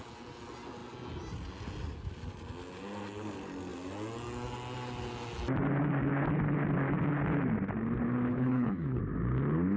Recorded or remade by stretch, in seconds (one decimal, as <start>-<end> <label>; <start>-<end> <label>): 0.0-8.3 recorded; 8.3-9.0 remade; 9.0-9.8 recorded